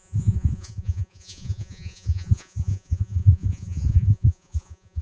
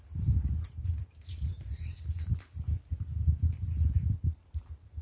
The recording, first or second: second